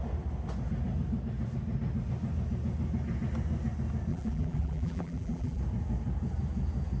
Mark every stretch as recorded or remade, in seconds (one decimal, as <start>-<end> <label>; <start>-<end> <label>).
0.0-4.1 recorded; 4.1-5.6 remade; 5.6-7.0 recorded